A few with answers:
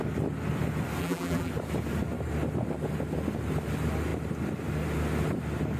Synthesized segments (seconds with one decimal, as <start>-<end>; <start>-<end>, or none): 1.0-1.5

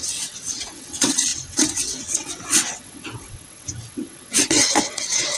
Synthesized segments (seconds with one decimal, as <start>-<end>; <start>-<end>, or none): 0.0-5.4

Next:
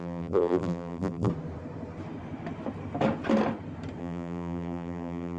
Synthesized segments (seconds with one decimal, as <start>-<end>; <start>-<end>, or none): 0.0-1.3; 4.0-5.4

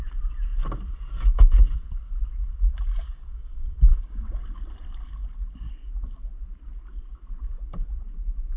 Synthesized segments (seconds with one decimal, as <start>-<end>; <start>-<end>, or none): 2.7-4.6

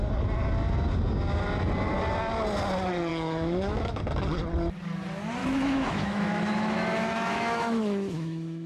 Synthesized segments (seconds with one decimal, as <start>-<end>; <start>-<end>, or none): 3.1-4.0; 5.4-8.7

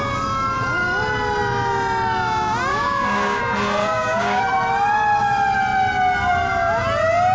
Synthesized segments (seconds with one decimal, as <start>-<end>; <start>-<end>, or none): 2.7-3.4; 3.8-4.4